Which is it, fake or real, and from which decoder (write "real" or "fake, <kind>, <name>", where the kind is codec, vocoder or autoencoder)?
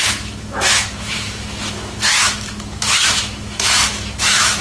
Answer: fake, autoencoder, DAC-VAE